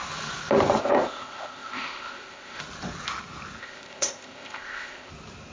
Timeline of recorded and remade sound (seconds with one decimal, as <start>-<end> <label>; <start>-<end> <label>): 0.0-0.8 recorded; 0.8-2.6 remade; 2.6-3.6 recorded; 3.6-5.1 remade; 5.1-5.5 recorded

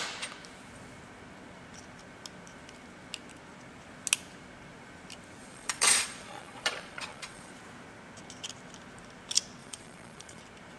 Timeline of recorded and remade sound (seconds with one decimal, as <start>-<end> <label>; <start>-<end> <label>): 0.0-5.4 recorded; 5.4-7.5 remade; 7.5-9.6 recorded; 9.6-10.4 remade; 10.4-10.8 recorded